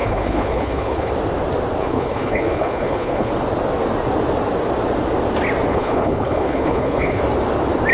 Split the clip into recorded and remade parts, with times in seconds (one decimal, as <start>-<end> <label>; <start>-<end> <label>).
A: 0.0-1.1 remade; 1.1-1.8 recorded; 1.8-3.3 remade; 3.3-5.7 recorded; 5.7-7.2 remade; 7.2-7.9 recorded